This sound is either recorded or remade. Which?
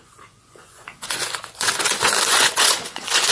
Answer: remade